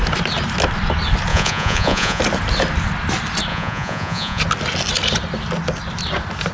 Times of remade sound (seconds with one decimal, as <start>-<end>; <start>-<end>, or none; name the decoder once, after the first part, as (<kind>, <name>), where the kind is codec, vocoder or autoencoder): 1.3-2.2 (vocoder, Vocos); 3.5-4.4